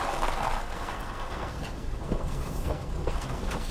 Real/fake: fake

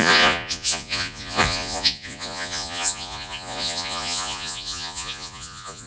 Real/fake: fake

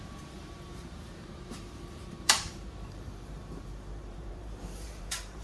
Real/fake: fake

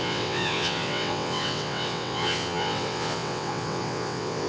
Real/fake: fake